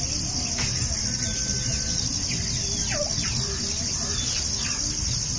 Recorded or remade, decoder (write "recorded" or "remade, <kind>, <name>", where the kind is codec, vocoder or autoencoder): recorded